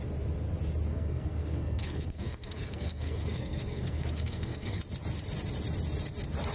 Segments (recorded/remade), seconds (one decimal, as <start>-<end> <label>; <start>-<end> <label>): 0.0-0.9 recorded; 0.9-4.8 remade; 4.8-6.5 recorded